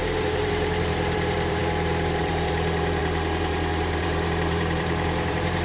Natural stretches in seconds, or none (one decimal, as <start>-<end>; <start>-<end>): none